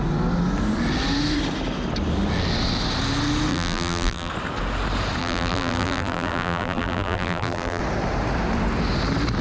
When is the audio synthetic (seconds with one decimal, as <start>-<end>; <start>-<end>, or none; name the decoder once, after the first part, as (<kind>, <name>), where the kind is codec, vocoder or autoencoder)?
3.5-4.3 (vocoder, BigVGAN v2); 5.2-7.8